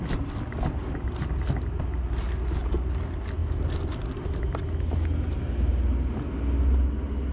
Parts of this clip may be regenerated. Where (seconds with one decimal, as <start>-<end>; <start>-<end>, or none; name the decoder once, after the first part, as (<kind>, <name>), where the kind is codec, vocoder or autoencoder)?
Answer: none